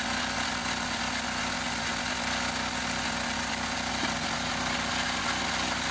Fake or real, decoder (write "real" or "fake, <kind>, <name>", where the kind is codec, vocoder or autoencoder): real